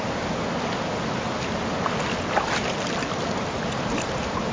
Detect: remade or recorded recorded